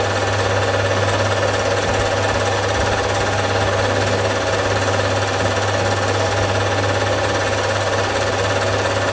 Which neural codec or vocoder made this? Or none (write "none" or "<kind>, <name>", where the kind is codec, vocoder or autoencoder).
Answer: none